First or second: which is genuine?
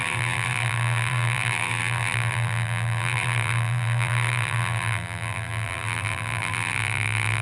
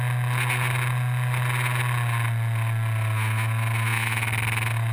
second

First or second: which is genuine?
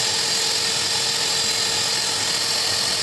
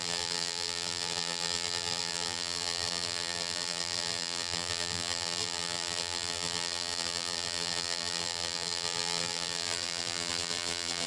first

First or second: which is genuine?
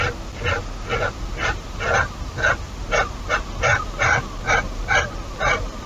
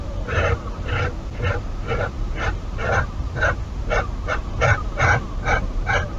first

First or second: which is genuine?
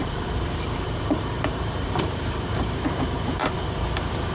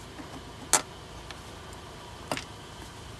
second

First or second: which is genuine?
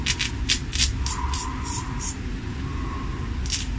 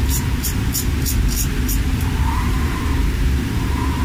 first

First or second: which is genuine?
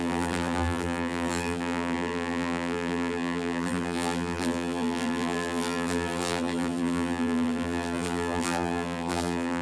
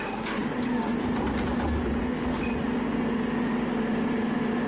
second